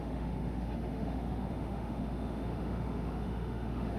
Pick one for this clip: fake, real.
fake